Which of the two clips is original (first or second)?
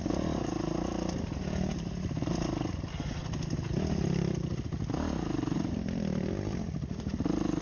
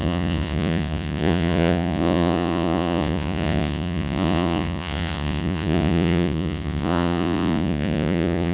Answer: first